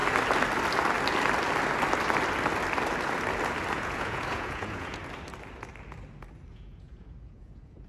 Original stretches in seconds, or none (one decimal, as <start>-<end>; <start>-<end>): 0.0-3.7; 5.0-6.5